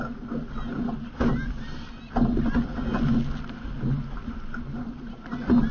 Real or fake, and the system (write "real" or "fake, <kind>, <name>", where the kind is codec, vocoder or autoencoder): real